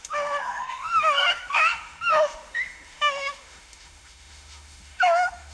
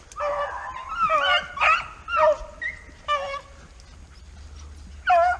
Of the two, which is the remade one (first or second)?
first